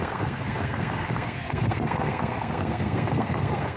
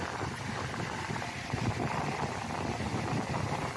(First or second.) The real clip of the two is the second